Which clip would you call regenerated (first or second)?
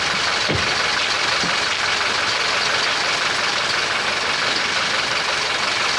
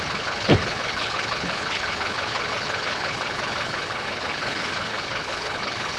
second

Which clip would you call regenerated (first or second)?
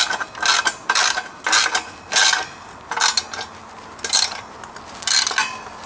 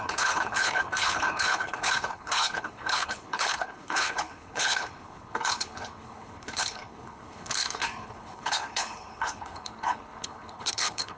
second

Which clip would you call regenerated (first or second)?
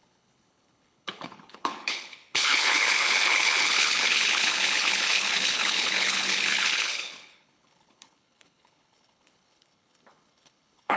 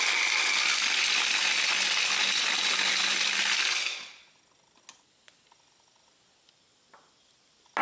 first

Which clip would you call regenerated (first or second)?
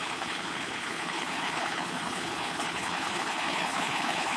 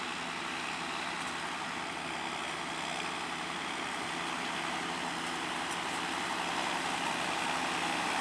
first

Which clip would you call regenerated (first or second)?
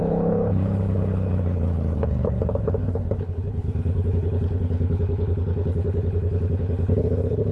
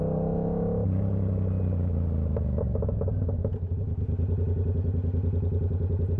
first